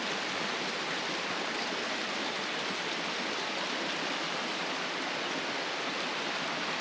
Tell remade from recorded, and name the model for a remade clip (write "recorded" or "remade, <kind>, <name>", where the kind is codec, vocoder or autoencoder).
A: recorded